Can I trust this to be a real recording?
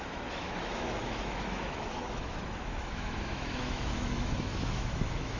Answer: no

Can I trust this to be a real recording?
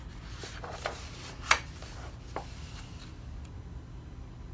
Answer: yes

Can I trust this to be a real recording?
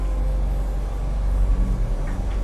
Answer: yes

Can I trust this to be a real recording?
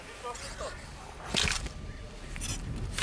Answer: yes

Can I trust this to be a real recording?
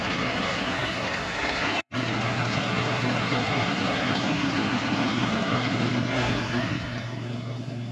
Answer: no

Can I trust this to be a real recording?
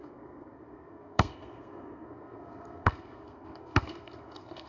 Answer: no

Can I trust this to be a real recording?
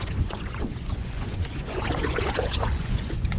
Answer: no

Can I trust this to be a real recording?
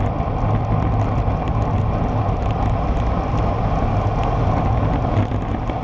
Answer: yes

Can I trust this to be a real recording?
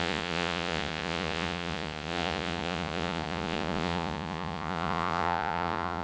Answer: no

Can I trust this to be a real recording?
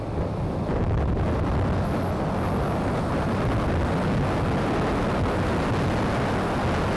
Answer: yes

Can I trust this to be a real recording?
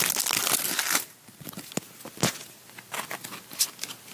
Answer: yes